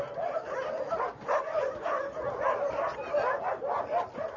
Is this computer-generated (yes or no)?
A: no